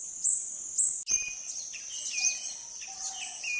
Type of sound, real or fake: real